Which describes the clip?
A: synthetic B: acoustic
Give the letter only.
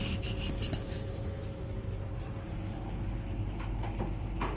B